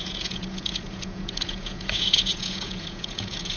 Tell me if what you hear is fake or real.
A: fake